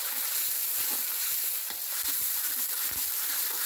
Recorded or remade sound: recorded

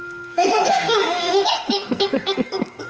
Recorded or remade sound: remade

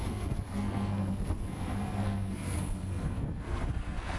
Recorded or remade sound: remade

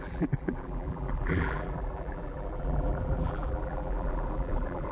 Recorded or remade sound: remade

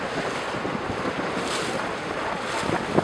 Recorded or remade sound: recorded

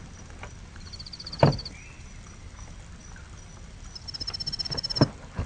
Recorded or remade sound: recorded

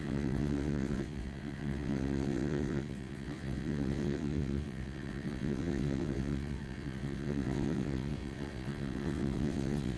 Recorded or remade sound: remade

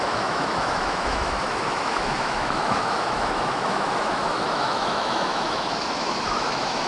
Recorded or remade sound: remade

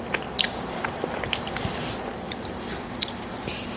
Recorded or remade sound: remade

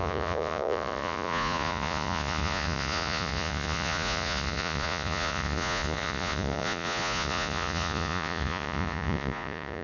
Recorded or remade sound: remade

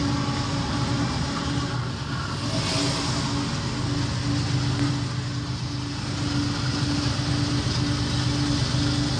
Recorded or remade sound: recorded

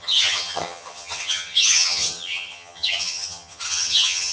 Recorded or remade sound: remade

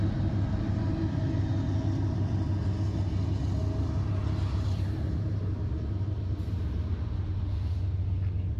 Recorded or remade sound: recorded